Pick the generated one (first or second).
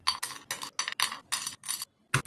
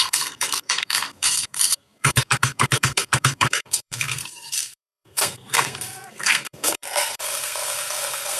second